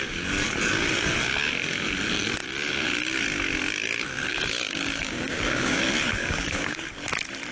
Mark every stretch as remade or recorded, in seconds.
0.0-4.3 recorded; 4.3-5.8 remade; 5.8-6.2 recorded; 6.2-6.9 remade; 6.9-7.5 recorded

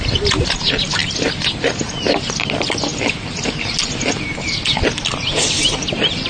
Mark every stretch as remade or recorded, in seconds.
0.0-6.3 recorded

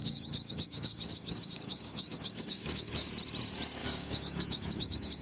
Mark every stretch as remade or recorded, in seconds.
0.0-3.1 remade; 3.1-3.8 recorded; 3.8-5.2 remade

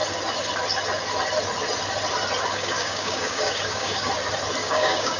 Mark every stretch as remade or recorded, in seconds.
0.0-2.5 recorded; 2.5-4.1 remade; 4.1-4.6 recorded; 4.6-5.2 remade

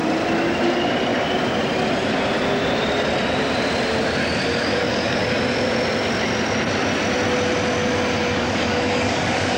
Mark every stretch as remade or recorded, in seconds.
0.0-4.6 recorded; 4.6-5.2 remade; 5.2-8.3 recorded; 8.3-9.6 remade

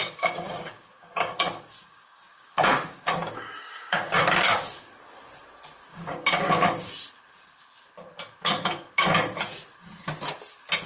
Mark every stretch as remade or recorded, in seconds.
0.0-4.9 remade; 4.9-5.9 recorded; 5.9-6.9 remade; 6.9-10.9 recorded

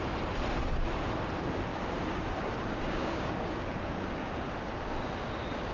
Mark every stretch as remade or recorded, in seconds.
0.0-1.7 recorded; 1.7-4.3 remade; 4.3-5.7 recorded